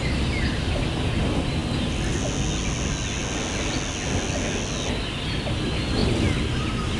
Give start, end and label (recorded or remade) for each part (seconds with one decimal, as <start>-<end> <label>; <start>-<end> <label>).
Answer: 0.0-7.0 recorded